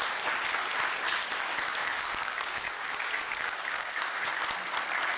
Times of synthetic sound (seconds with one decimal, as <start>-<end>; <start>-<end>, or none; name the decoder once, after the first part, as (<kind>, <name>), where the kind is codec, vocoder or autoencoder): 1.8-4.3 (codec, DAC)

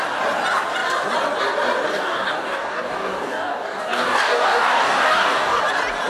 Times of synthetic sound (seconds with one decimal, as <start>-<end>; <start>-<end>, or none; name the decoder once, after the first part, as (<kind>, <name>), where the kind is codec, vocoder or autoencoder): 1.9-5.6 (codec, DAC)